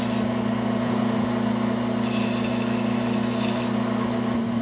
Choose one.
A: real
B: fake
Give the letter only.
A